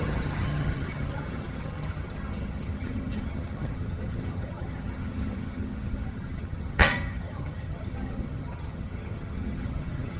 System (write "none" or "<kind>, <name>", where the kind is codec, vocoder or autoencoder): vocoder, HiFi-GAN